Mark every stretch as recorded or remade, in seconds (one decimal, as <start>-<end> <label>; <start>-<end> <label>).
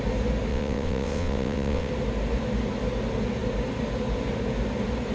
0.0-0.5 recorded; 0.5-1.9 remade; 1.9-5.1 recorded